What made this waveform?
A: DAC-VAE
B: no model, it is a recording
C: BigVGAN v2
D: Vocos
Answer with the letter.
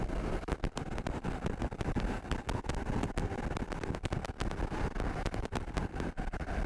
B